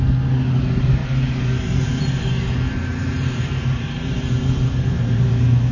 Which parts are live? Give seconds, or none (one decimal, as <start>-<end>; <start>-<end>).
0.0-1.0; 2.2-2.9; 5.3-5.7